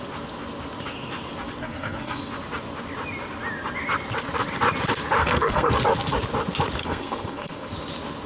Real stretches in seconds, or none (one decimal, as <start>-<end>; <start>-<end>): 0.0-1.6; 2.2-5.2; 5.7-6.8; 7.7-8.3